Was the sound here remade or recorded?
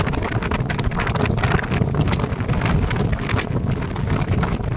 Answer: recorded